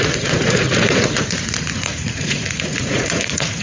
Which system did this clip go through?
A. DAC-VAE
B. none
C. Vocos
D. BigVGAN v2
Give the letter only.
C